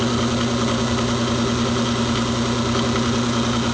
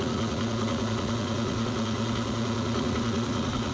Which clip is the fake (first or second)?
second